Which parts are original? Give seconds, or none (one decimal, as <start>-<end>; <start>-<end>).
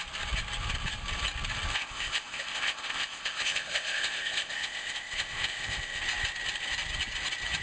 0.0-1.7; 6.0-7.6